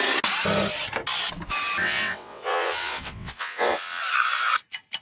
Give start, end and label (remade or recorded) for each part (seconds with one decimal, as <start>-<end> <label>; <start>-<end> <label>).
0.0-1.8 recorded; 1.8-4.0 remade; 4.0-5.0 recorded